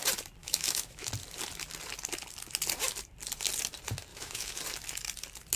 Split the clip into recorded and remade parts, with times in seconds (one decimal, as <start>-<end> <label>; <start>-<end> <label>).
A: 0.0-0.4 recorded; 0.4-1.1 remade; 1.1-4.1 recorded; 4.1-4.6 remade; 4.6-5.6 recorded